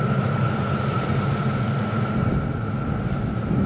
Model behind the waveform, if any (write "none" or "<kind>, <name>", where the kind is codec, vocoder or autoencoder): none